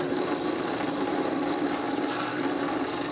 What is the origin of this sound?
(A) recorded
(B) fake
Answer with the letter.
A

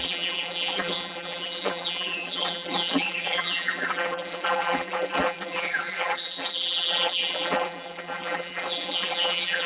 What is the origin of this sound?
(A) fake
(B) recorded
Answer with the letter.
A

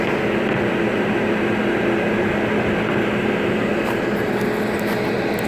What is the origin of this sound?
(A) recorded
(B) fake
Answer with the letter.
A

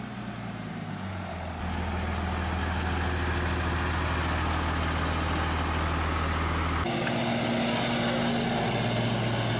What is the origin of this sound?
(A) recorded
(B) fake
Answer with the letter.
A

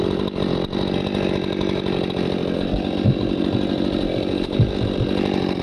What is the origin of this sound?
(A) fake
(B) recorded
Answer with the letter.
B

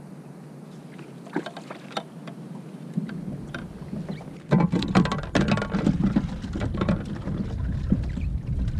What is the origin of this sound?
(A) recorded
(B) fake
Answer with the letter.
A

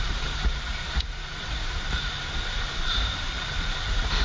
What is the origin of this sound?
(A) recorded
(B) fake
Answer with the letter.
B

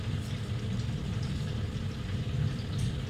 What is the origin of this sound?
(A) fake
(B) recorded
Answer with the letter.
B